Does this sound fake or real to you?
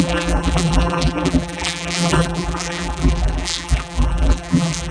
fake